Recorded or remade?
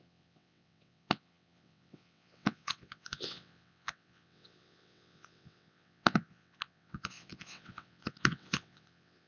remade